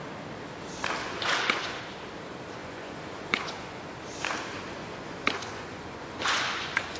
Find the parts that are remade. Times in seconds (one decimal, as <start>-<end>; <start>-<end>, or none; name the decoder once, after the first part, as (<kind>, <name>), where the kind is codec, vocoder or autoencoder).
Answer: 1.0-1.8 (vocoder, Vocos); 2.6-3.9; 4.8-7.0